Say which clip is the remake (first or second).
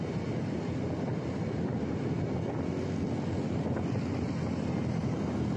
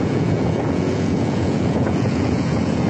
second